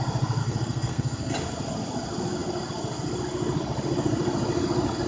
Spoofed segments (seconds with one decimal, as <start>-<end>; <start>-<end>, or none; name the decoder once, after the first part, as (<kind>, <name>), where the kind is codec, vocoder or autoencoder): 0.4-1.3 (codec, SNAC)